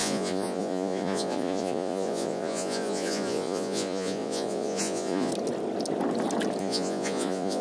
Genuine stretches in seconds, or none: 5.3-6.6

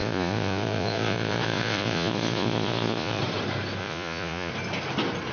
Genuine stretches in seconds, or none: 3.2-3.8; 4.5-5.3

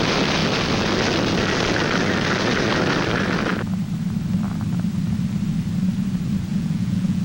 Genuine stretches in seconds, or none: 0.0-6.5

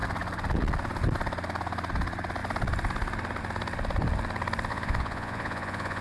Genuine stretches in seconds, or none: 0.0-4.7

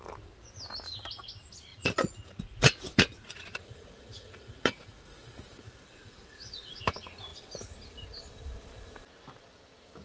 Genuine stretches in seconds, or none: 0.0-1.7; 6.8-10.0

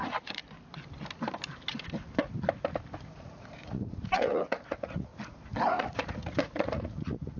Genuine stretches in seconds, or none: 0.4-3.1; 5.1-5.7

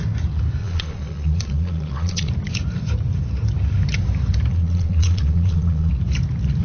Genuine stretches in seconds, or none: 0.0-0.6; 2.3-4.5; 5.9-6.6

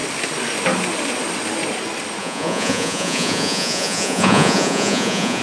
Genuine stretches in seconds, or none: 0.0-2.2